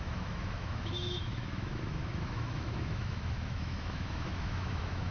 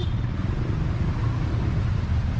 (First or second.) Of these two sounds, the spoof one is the first